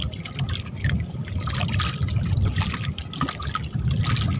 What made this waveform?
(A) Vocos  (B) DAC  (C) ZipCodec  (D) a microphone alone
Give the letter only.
D